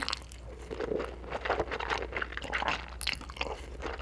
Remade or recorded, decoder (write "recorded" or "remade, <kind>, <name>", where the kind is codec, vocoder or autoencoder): recorded